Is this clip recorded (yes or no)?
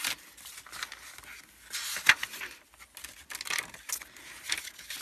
yes